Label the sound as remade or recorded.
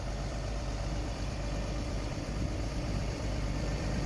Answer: remade